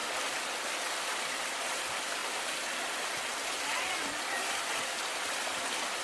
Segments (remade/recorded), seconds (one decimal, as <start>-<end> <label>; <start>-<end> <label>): 0.0-0.7 recorded; 0.7-2.2 remade; 2.2-6.0 recorded